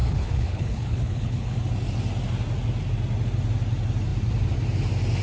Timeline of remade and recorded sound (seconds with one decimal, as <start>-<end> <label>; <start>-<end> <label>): 0.0-1.6 remade; 1.6-5.2 recorded